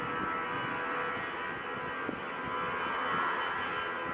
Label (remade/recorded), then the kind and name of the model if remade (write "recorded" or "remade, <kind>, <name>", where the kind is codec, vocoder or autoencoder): recorded